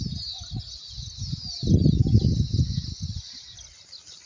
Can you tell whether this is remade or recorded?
recorded